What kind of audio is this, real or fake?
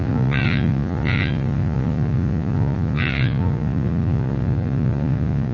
fake